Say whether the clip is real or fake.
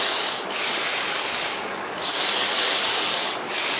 fake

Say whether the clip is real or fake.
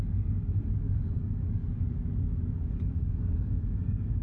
fake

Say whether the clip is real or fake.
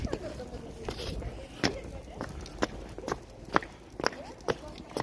real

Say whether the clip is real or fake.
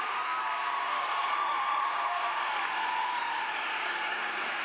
real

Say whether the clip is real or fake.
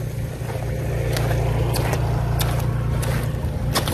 real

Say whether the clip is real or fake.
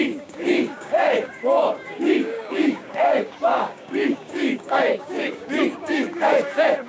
fake